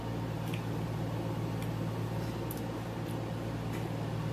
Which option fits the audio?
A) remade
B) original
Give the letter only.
B